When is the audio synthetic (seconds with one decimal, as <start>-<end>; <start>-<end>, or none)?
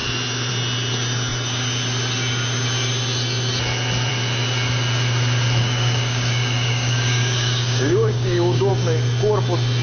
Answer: 5.6-8.7